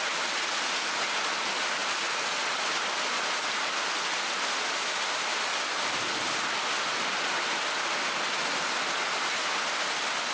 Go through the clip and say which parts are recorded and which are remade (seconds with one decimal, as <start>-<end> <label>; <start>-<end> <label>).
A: 0.0-10.3 recorded